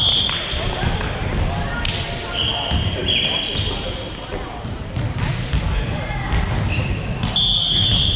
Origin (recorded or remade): recorded